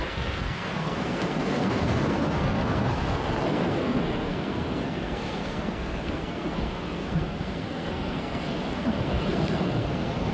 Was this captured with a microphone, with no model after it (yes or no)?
no